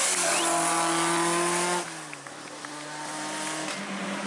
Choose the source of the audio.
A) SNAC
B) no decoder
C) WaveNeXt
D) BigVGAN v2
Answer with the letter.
B